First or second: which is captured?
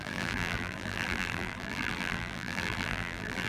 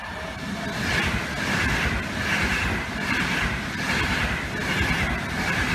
second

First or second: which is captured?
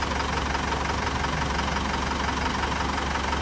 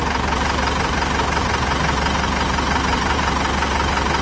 first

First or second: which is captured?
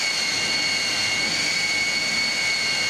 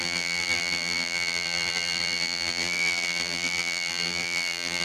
first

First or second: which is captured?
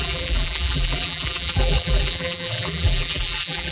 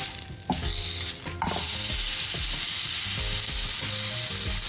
second